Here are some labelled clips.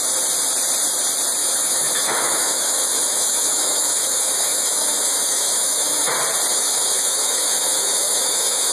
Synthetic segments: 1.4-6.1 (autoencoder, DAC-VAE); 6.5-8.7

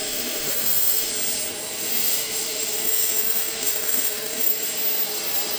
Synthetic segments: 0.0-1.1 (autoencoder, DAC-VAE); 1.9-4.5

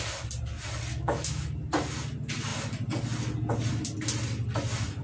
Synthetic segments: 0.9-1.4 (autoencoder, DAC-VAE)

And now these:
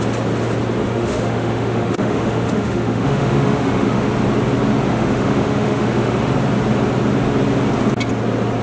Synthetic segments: 0.8-4.1 (autoencoder, DAC-VAE); 4.9-6.3

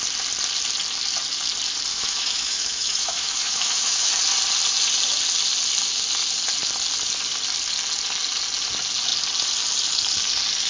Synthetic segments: 1.9-4.1 (autoencoder, DAC-VAE)

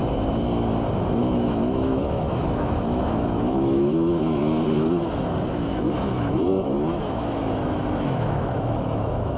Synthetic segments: 1.2-4.4 (autoencoder, DAC-VAE); 5.5-9.4